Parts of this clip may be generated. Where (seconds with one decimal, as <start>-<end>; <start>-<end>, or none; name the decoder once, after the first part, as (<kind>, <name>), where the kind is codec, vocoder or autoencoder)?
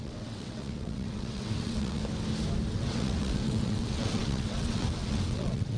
0.0-2.0 (vocoder, WaveNeXt); 2.7-5.8